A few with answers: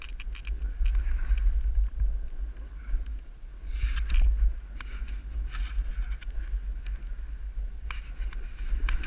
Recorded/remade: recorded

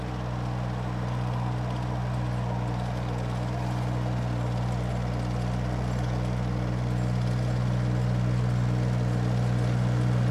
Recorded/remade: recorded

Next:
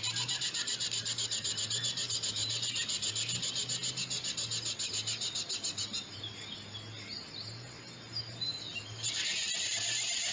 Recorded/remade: recorded